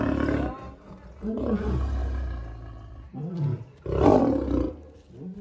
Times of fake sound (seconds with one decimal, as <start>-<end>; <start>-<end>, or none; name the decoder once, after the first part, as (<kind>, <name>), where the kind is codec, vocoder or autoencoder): none

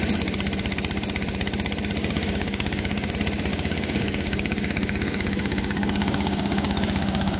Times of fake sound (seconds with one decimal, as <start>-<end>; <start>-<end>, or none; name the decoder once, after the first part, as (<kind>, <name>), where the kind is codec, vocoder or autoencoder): 2.0-3.1 (codec, DAC); 3.5-7.4

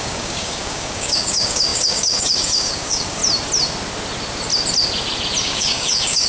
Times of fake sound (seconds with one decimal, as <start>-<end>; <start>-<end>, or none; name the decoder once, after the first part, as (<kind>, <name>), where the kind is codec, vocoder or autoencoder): 0.0-3.2 (codec, DAC); 5.4-6.3

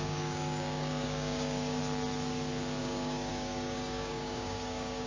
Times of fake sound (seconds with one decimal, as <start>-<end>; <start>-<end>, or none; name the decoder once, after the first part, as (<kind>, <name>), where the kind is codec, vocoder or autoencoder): 0.0-1.8 (codec, DAC); 2.8-5.1